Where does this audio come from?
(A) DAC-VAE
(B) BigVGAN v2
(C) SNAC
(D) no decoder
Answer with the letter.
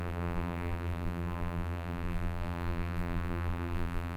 B